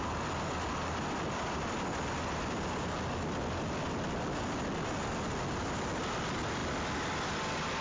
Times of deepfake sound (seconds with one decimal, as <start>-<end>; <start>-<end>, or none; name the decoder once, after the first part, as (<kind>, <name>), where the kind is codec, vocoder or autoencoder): 6.6-7.8 (vocoder, BigVGAN v2)